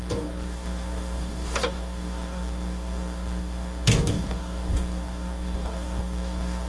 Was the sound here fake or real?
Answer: fake